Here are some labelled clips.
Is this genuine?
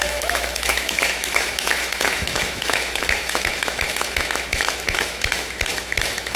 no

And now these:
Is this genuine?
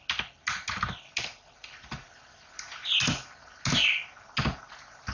yes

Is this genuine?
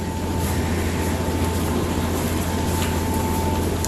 yes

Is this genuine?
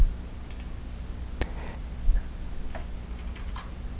yes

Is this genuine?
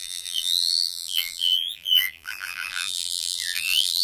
no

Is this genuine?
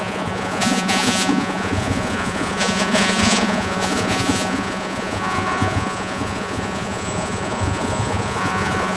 no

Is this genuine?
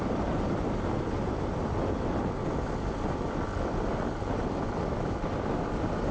yes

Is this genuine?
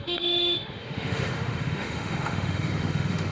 no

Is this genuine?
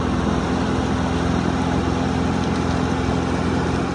yes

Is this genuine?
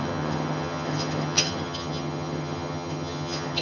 no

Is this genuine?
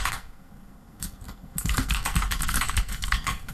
no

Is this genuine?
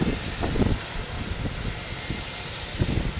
yes